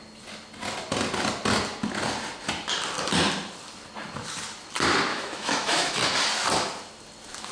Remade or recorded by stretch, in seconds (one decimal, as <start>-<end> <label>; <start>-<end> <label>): 0.0-5.1 recorded; 5.1-6.0 remade; 6.0-7.5 recorded